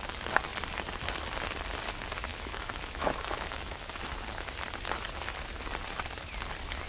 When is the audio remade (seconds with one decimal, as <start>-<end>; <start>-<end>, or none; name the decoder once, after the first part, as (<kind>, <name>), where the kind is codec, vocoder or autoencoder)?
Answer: 2.3-3.9 (autoencoder, DAC-VAE)

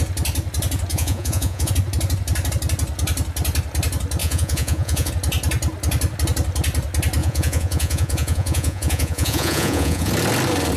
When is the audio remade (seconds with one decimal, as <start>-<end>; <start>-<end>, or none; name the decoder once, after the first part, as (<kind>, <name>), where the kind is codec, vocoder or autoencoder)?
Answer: 0.9-1.7 (vocoder, Vocos); 4.2-5.1; 7.2-10.1